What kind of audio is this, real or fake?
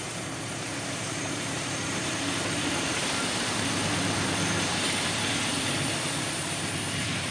fake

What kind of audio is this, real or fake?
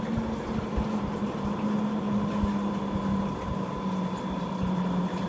real